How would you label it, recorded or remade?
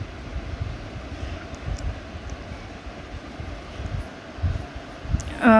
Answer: recorded